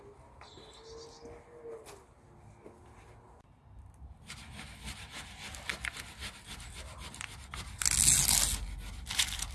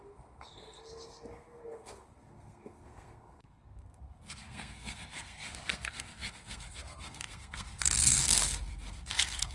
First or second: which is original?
first